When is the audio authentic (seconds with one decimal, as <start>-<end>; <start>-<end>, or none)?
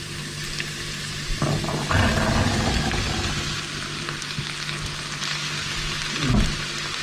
0.0-7.0